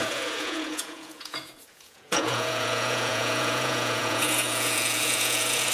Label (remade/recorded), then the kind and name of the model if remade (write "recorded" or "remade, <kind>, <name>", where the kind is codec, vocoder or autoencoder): remade, vocoder, Vocos